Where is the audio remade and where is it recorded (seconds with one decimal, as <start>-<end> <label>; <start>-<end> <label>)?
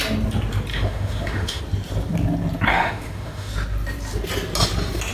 0.0-0.7 recorded; 0.7-1.6 remade; 1.6-2.7 recorded; 2.7-3.5 remade; 3.5-5.1 recorded